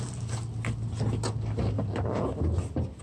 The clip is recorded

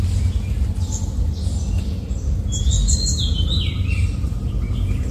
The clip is recorded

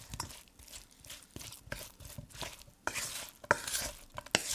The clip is recorded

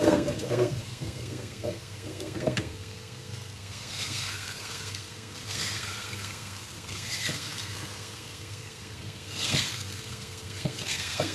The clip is remade